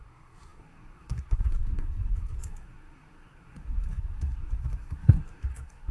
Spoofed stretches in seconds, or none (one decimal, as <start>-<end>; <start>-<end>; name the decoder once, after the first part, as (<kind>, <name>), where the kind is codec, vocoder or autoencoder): 0.0-5.9 (codec, SNAC)